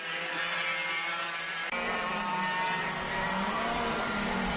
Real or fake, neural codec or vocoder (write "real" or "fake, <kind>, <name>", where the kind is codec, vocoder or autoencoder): real